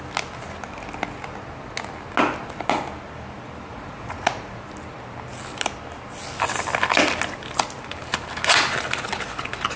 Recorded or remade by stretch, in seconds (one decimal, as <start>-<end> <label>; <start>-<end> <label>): 0.0-3.7 recorded; 3.7-4.6 remade; 4.6-9.8 recorded